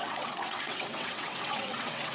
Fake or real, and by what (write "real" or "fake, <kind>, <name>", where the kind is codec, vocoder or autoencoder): fake, vocoder, WaveNeXt